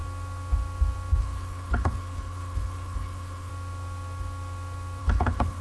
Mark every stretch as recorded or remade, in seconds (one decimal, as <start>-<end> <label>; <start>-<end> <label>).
0.0-1.2 recorded; 1.2-3.5 remade; 3.5-5.0 recorded; 5.0-5.6 remade